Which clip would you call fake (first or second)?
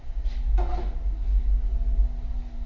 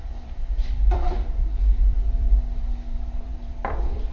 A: second